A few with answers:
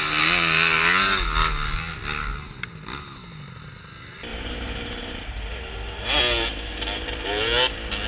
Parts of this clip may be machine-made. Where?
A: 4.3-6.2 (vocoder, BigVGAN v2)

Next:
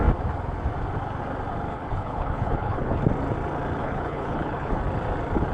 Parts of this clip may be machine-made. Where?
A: 1.7-3.0 (codec, HILCodec); 3.8-4.8

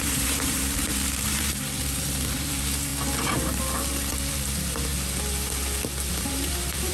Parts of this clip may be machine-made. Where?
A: 0.0-2.9 (vocoder, BigVGAN v2); 4.3-4.9; 6.1-6.9

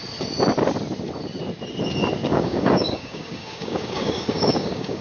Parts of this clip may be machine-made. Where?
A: 2.2-5.0 (codec, DAC)

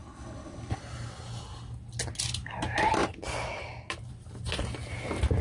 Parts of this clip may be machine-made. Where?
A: 0.0-0.8 (codec, HILCodec)

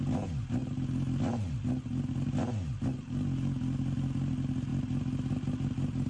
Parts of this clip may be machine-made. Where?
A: none

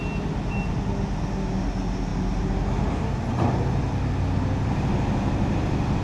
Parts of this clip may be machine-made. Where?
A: none